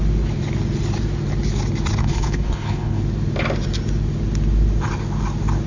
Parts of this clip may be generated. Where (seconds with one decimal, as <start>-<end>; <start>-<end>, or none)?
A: 2.0-3.0